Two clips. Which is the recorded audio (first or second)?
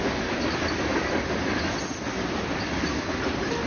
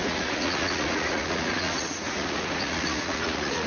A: first